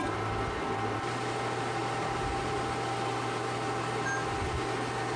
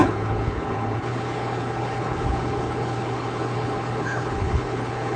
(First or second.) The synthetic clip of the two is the second